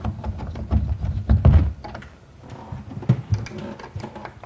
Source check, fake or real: real